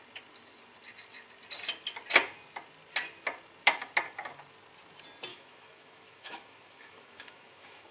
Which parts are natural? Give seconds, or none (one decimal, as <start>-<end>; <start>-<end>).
0.0-5.3